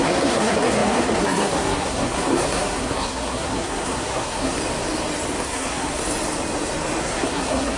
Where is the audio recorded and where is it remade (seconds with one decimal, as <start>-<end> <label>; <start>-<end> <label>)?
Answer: 0.0-4.6 remade; 4.6-5.4 recorded; 5.4-6.0 remade; 6.0-7.0 recorded; 7.0-7.8 remade

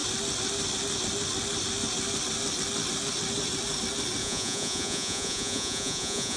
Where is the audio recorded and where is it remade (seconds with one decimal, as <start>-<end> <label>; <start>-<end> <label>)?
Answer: 0.0-4.2 recorded; 4.2-6.4 remade

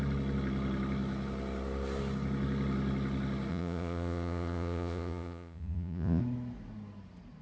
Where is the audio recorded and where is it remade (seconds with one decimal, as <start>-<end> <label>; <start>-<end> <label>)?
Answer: 0.0-3.5 recorded; 3.5-6.2 remade; 6.2-7.4 recorded

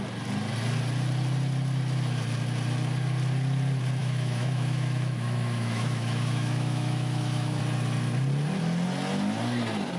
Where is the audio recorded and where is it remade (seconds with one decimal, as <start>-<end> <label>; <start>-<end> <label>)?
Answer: 0.0-4.0 recorded; 4.0-7.6 remade; 7.6-10.0 recorded

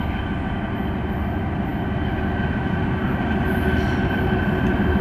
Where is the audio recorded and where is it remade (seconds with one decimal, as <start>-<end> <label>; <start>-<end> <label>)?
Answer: 0.0-5.0 recorded

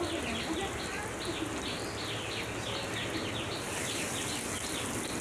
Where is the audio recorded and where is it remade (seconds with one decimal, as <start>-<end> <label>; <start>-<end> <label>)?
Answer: 0.0-5.2 recorded

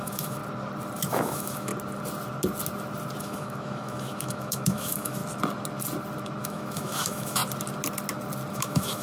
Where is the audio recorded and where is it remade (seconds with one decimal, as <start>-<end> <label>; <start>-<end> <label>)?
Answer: 0.0-0.4 remade; 0.4-1.1 recorded; 1.1-1.7 remade; 1.7-3.2 recorded; 3.2-5.2 remade; 5.2-6.4 recorded; 6.4-7.4 remade; 7.4-8.5 recorded; 8.5-9.0 remade

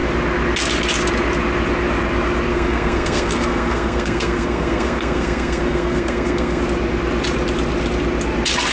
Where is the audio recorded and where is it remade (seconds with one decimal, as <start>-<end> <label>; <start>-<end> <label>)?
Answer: 0.0-2.5 recorded; 2.5-6.6 remade; 6.6-8.7 recorded